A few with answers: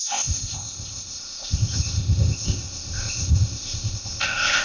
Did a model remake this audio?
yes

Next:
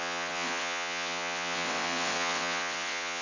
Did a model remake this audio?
yes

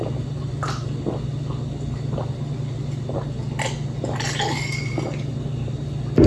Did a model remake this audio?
no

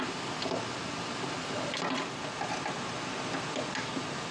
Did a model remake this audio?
no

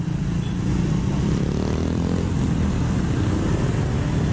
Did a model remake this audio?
no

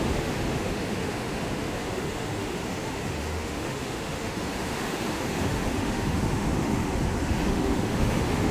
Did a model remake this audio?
yes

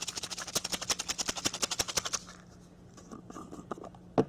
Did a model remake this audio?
no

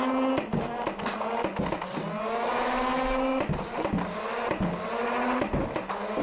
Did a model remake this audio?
no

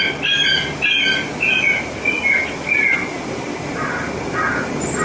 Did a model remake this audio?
no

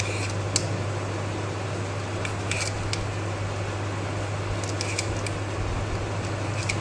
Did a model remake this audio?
no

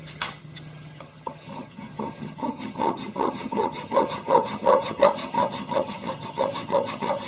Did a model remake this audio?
yes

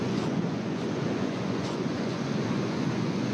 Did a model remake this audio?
yes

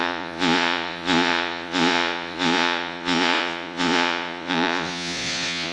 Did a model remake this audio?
yes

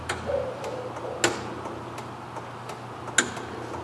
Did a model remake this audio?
no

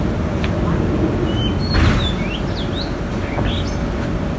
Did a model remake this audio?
no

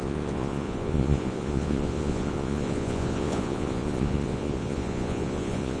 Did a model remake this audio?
yes